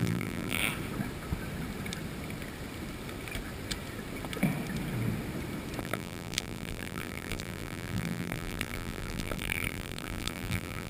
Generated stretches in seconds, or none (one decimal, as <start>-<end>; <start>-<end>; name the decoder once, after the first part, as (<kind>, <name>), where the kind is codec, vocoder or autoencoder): 0.0-0.6 (vocoder, BigVGAN v2); 5.8-10.9